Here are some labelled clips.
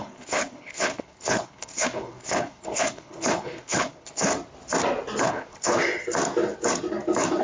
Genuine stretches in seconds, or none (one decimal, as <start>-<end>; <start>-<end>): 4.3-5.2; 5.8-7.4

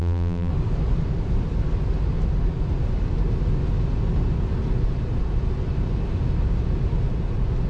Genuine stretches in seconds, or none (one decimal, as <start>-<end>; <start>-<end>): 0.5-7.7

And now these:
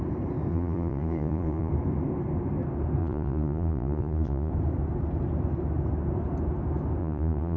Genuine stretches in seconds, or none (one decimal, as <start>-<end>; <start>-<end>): 0.0-0.5; 1.7-3.0; 4.5-7.0

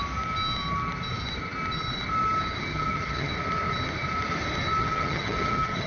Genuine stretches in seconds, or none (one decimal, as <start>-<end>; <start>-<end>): 0.0-2.7; 3.3-4.8

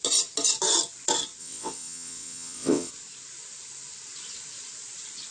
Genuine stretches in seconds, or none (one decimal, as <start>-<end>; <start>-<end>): 0.0-1.4; 2.9-5.3